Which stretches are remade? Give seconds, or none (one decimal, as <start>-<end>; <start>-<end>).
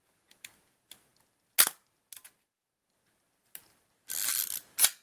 none